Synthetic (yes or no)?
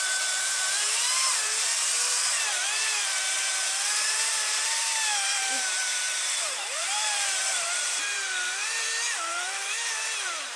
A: yes